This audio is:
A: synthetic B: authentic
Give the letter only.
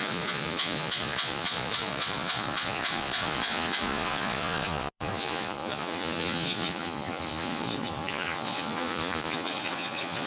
A